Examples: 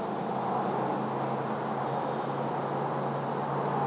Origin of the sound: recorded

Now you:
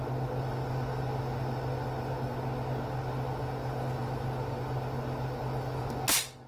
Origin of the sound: recorded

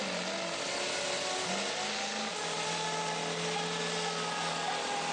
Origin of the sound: recorded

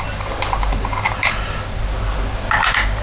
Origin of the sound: recorded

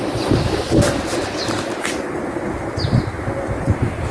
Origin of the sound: recorded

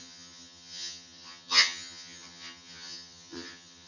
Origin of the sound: remade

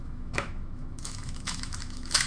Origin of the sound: remade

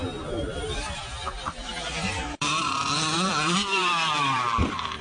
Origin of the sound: remade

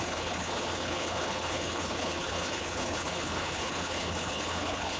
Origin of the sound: remade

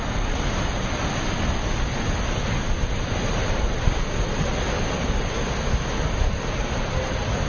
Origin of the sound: recorded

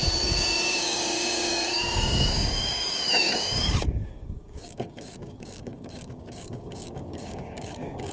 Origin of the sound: remade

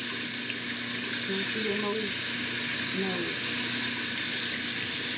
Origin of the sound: recorded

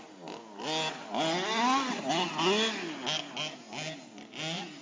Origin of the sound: recorded